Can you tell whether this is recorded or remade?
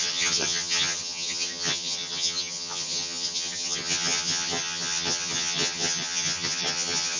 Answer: remade